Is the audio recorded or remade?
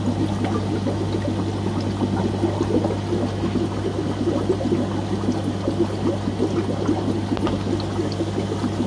recorded